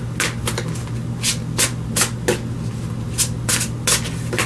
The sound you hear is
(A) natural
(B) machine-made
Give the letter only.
A